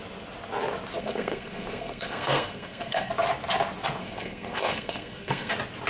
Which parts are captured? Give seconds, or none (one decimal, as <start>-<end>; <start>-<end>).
0.0-1.0; 3.1-4.0; 5.5-5.9